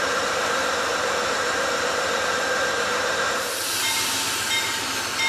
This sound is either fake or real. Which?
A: fake